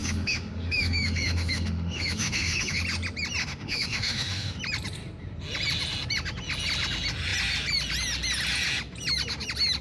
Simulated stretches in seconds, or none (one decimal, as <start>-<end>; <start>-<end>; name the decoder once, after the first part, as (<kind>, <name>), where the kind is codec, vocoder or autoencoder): 0.0-2.8 (autoencoder, DAC-VAE); 3.4-4.6